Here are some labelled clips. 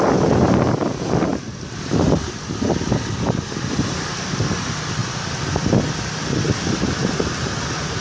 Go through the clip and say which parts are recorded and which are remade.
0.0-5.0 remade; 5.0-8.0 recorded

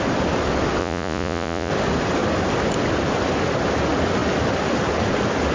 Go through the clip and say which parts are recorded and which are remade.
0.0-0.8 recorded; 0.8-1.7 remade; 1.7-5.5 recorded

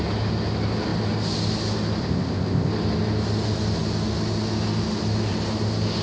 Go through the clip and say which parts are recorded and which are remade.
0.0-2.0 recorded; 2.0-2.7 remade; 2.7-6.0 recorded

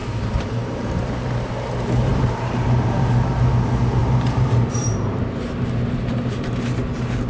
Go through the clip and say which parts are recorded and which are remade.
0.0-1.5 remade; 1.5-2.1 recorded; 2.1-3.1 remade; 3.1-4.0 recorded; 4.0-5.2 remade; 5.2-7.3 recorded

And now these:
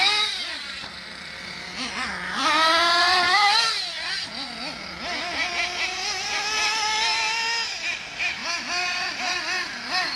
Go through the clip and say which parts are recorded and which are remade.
0.0-10.2 recorded

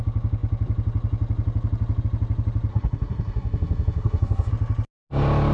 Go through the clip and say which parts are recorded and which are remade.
0.0-2.7 recorded; 2.7-4.5 remade; 4.5-5.5 recorded

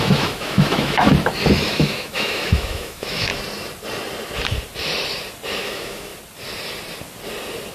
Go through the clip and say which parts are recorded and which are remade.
0.0-1.1 remade; 1.1-1.7 recorded; 1.7-3.3 remade; 3.3-5.6 recorded; 5.6-6.1 remade; 6.1-7.7 recorded

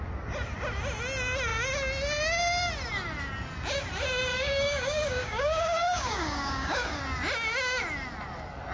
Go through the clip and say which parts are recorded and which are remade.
0.0-4.3 recorded; 4.3-7.0 remade; 7.0-8.7 recorded